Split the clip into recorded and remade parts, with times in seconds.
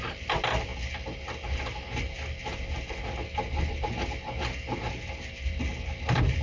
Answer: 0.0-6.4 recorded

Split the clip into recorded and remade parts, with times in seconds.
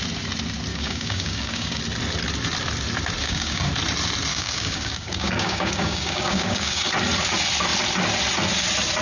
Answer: 0.0-0.7 recorded; 0.7-1.8 remade; 1.8-3.2 recorded; 3.2-3.7 remade; 3.7-4.3 recorded; 4.3-6.9 remade; 6.9-9.0 recorded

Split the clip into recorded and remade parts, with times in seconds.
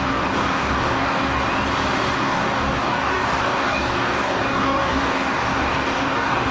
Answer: 0.0-1.4 remade; 1.4-2.2 recorded; 2.2-6.5 remade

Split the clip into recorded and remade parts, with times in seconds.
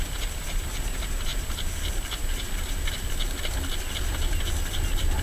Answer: 0.0-5.2 recorded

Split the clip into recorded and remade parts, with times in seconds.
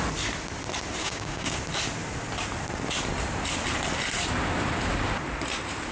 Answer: 0.0-1.0 recorded; 1.0-1.6 remade; 1.6-5.9 recorded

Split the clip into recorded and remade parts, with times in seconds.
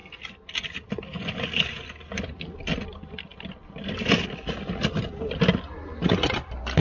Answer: 0.0-6.8 recorded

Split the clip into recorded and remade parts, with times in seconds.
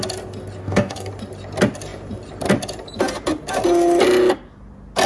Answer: 0.0-0.6 recorded; 0.6-1.1 remade; 1.1-5.1 recorded